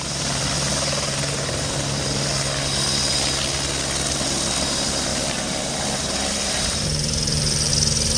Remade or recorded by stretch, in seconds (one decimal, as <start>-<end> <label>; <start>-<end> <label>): 0.0-0.7 recorded; 0.7-2.3 remade; 2.3-5.1 recorded; 5.1-7.7 remade; 7.7-8.2 recorded